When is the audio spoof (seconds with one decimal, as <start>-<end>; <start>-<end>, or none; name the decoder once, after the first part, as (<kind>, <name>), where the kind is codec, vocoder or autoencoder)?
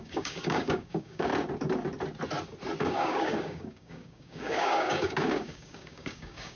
0.0-1.3 (codec, DAC); 2.8-6.6